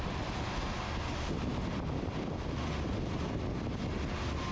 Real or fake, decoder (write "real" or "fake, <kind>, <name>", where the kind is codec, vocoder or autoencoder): real